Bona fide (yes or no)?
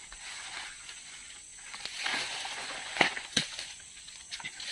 no